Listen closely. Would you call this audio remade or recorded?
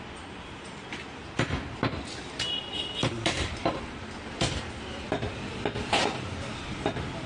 remade